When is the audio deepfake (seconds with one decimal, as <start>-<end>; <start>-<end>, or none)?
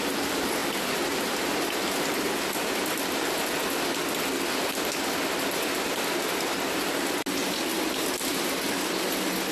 none